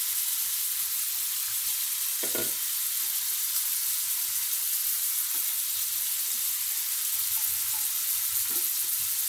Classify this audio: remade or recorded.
recorded